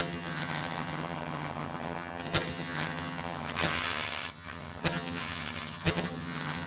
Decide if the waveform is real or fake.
fake